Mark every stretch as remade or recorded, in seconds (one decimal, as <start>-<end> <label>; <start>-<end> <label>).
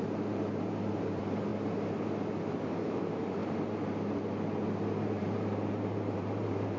0.0-1.5 remade; 1.5-2.6 recorded; 2.6-3.4 remade; 3.4-5.0 recorded; 5.0-6.8 remade